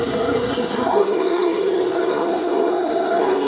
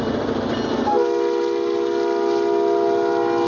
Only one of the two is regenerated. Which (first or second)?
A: first